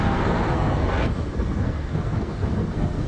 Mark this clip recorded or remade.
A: remade